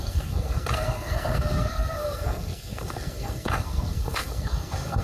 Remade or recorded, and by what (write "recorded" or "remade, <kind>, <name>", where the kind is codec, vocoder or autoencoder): remade, codec, SNAC